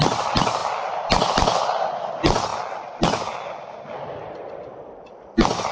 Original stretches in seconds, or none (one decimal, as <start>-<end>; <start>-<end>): 0.0-5.7